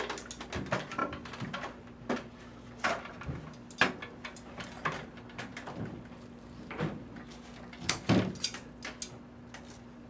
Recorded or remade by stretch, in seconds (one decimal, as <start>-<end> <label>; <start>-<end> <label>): 0.0-10.1 recorded